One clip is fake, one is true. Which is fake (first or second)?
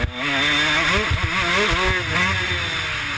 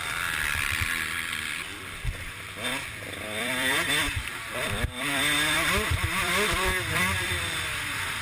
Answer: second